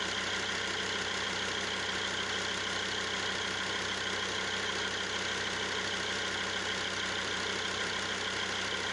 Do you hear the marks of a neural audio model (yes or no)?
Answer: no